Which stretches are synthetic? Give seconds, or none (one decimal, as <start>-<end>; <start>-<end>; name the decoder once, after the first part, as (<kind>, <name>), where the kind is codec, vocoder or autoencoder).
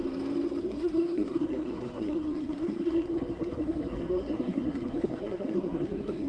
0.6-6.3 (codec, SNAC)